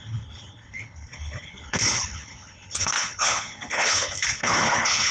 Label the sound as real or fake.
fake